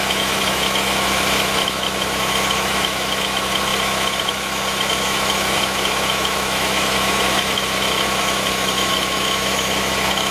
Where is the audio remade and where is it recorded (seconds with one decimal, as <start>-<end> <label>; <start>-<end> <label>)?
0.0-10.3 remade